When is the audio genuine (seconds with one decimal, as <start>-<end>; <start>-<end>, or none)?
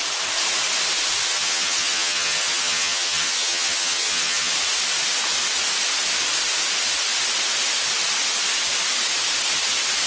0.0-1.3; 4.5-10.1